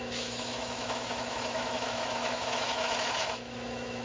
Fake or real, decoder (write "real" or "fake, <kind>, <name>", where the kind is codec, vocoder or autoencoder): fake, autoencoder, DAC-VAE